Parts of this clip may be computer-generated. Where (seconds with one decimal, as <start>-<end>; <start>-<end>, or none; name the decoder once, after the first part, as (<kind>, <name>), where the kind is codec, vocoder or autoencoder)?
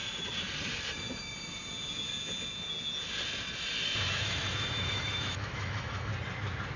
4.1-6.1 (autoencoder, DAC-VAE)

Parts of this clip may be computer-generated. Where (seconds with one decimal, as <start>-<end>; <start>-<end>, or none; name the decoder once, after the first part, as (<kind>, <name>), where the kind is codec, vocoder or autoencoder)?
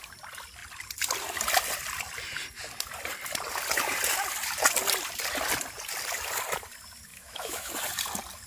7.1-7.7 (autoencoder, DAC-VAE)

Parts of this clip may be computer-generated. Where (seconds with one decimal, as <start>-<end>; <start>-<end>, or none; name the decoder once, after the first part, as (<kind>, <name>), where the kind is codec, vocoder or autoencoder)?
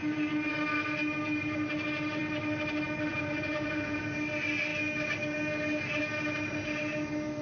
3.1-4.0 (vocoder, Vocos)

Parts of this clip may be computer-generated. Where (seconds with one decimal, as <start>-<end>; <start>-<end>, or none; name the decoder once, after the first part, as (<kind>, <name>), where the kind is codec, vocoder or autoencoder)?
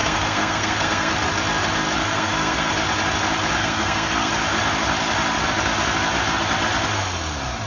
0.0-1.1 (codec, SNAC); 2.0-2.7; 3.6-4.3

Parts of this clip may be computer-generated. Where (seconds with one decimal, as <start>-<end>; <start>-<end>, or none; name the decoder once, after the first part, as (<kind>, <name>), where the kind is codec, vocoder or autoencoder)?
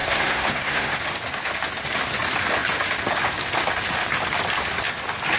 0.0-1.0 (codec, SNAC)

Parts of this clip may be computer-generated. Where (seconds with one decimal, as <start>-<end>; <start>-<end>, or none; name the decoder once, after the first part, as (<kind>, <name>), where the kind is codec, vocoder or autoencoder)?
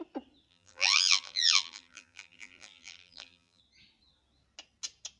0.5-3.6 (vocoder, BigVGAN v2)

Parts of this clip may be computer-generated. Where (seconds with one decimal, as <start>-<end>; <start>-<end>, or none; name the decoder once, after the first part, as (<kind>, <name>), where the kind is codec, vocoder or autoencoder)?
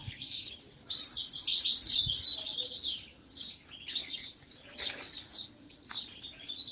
0.0-0.5 (codec, SNAC)